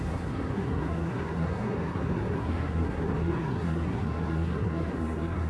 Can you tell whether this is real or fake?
fake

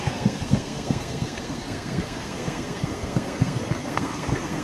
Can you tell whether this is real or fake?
fake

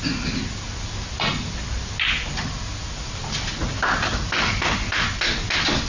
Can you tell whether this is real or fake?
real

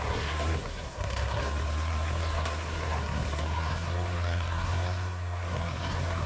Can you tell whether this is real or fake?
fake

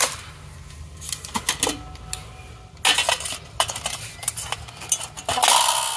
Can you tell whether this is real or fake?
real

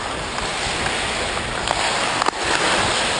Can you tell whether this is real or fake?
real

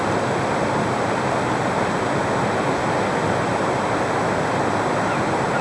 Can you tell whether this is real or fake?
real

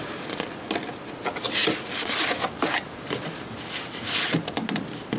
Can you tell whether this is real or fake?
real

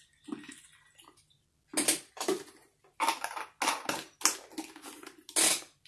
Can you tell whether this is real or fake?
real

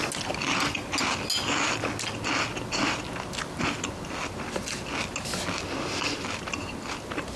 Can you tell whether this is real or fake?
real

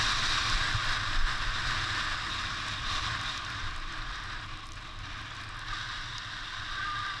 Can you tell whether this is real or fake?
real